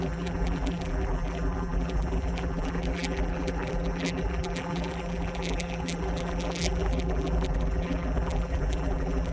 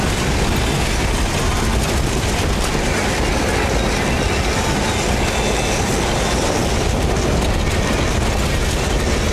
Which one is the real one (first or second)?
second